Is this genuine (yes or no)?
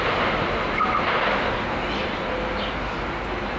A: yes